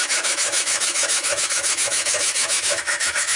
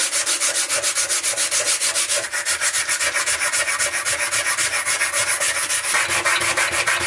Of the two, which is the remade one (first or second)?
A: first